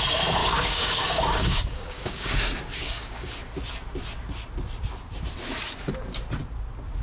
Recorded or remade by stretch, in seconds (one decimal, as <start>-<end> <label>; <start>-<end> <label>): 0.0-0.4 recorded; 0.4-3.3 remade; 3.3-7.0 recorded